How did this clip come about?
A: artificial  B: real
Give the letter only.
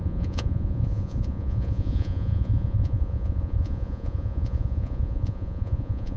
A